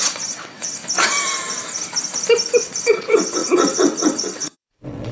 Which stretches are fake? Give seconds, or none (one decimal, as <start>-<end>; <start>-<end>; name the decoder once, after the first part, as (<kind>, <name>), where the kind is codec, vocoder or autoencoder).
0.0-0.8 (vocoder, WaveNeXt); 2.6-5.1